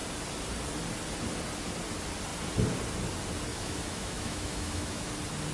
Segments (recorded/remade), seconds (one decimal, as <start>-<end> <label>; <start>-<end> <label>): 0.0-3.5 recorded; 3.5-5.1 remade; 5.1-5.5 recorded